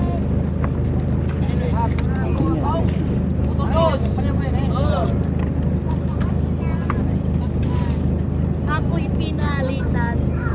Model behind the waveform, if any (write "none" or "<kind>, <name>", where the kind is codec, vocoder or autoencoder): none